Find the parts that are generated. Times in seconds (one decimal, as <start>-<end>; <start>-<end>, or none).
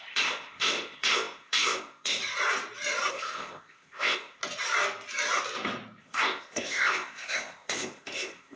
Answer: 0.0-2.2; 3.1-4.4; 6.0-8.6